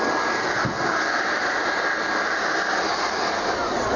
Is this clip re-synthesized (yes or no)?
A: no